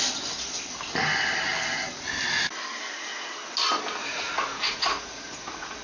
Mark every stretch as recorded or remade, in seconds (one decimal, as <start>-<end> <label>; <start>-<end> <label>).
0.0-4.0 recorded; 4.0-5.8 remade